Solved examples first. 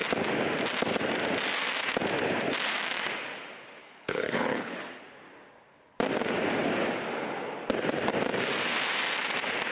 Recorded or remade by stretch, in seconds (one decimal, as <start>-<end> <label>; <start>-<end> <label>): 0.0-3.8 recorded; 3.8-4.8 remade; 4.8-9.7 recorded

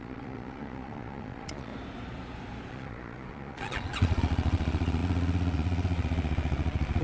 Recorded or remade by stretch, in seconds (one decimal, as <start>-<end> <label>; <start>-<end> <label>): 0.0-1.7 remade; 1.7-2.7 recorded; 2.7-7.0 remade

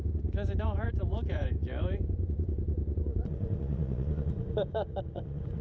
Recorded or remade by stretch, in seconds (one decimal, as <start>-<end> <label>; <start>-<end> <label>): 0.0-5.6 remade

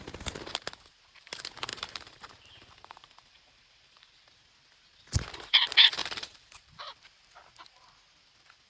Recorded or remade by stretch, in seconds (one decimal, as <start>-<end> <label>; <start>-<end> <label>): 0.0-1.7 recorded; 1.7-4.3 remade; 4.3-6.0 recorded; 6.0-6.7 remade; 6.7-8.7 recorded

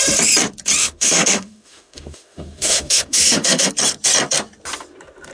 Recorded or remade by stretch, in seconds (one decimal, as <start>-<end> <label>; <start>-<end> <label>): 0.0-0.8 recorded; 0.8-3.7 remade; 3.7-5.3 recorded